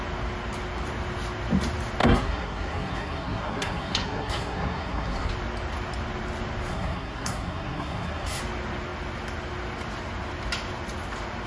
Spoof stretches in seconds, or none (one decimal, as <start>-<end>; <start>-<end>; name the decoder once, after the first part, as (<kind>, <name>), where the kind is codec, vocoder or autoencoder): 2.0-5.3 (codec, SNAC); 6.7-8.4